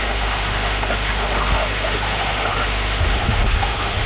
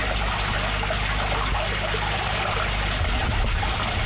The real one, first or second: second